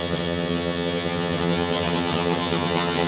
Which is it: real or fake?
fake